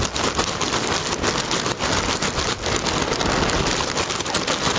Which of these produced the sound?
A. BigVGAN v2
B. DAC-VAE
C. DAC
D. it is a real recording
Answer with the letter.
D